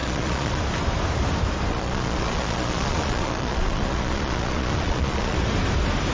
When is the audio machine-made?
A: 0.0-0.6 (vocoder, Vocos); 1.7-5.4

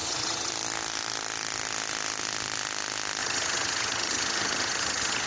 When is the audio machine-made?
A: 0.0-0.5 (vocoder, HiFi-GAN); 3.2-5.3

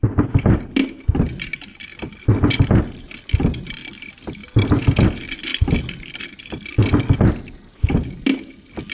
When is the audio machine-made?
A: none

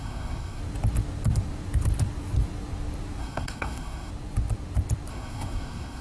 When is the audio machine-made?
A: 0.0-0.6 (codec, SNAC); 3.2-4.1; 5.1-6.0

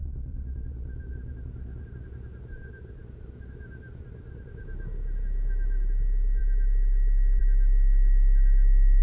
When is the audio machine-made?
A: none